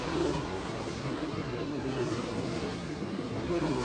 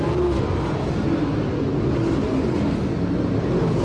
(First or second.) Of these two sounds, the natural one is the second